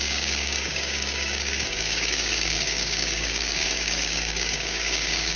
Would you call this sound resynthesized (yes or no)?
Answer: yes